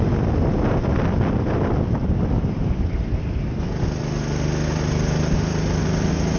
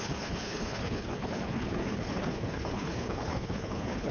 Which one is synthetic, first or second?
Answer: second